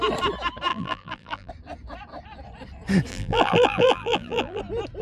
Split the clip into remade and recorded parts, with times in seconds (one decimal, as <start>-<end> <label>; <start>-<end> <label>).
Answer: 0.0-0.7 recorded; 0.7-1.5 remade; 1.5-3.1 recorded; 3.1-4.6 remade; 4.6-5.0 recorded